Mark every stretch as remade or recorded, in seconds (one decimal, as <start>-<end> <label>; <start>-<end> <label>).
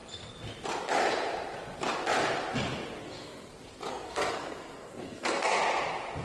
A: 0.0-3.0 recorded; 3.0-3.5 remade; 3.5-3.9 recorded; 3.9-5.6 remade; 5.6-6.2 recorded